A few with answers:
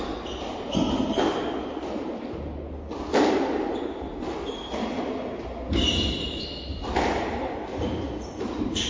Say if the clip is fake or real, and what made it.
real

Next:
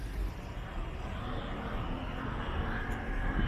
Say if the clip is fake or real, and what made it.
real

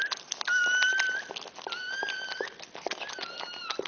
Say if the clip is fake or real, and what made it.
real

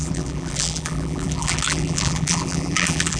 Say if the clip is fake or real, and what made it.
fake, vocoder, BigVGAN v2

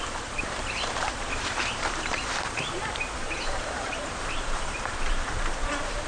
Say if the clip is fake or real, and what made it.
fake, vocoder, BigVGAN v2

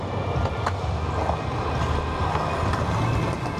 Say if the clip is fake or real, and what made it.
real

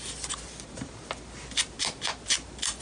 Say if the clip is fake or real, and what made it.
real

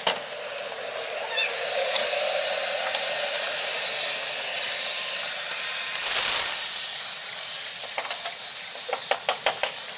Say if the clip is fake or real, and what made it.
real